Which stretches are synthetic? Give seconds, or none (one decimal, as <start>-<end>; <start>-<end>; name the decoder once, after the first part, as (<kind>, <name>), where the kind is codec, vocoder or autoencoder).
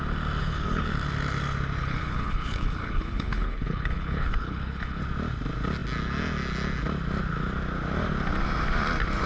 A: 0.4-0.9 (codec, HILCodec); 1.8-5.0